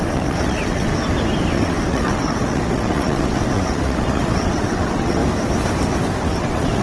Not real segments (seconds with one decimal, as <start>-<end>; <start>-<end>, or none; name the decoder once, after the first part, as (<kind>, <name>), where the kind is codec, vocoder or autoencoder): 0.0-0.9 (vocoder, WaveNeXt); 1.5-5.2; 6.2-6.8